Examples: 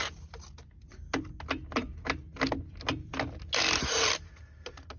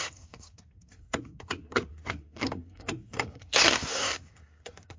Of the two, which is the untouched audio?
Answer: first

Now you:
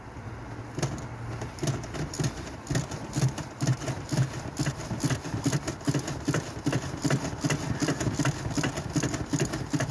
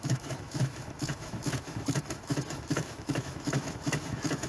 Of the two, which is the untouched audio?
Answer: first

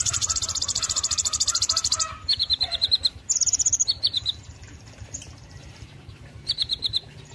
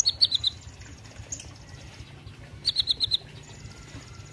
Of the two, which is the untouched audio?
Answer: second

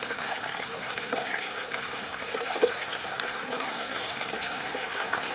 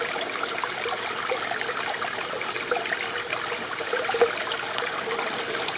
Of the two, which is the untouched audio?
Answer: second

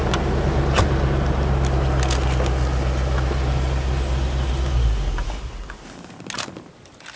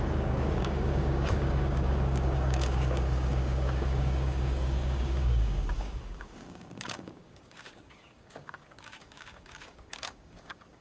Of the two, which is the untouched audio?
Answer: first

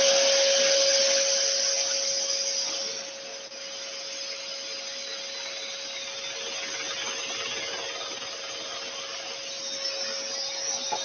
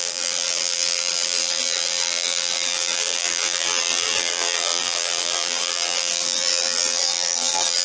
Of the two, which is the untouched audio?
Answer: first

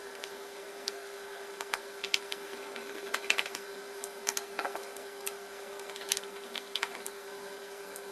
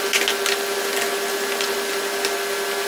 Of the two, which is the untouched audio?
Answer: second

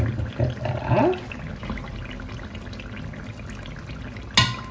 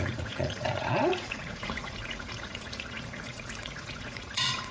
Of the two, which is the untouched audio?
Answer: first